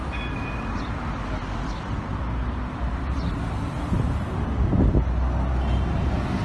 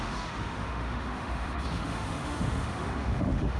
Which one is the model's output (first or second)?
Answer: second